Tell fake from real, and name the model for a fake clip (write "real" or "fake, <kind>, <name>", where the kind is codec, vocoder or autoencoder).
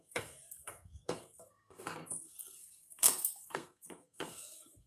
fake, codec, SNAC